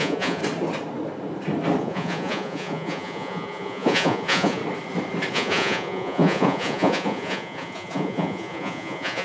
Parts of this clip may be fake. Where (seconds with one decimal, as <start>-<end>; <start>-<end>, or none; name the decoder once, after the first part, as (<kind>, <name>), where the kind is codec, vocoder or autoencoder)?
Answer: 0.0-0.4 (vocoder, Vocos); 1.8-4.6; 5.3-9.2